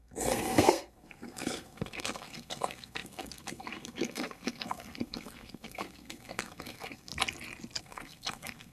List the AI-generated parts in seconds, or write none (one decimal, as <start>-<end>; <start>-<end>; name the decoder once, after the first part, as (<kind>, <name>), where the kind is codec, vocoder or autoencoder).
0.0-7.1 (codec, SNAC); 7.8-8.7